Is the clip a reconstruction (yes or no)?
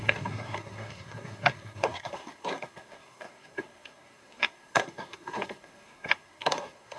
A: yes